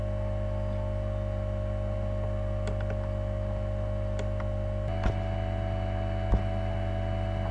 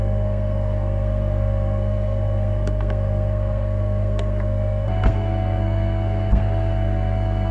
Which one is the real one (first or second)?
first